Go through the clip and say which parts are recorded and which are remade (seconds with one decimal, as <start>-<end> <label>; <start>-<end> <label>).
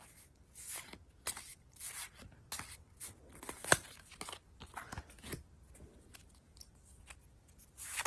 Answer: 0.0-8.1 recorded